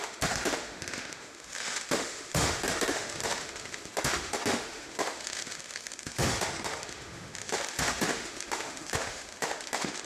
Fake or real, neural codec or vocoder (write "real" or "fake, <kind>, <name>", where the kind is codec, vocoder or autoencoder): fake, autoencoder, DAC-VAE